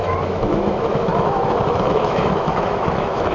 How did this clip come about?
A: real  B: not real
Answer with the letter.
B